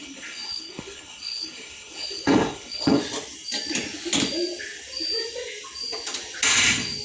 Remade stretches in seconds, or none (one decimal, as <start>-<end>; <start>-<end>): 0.0-3.0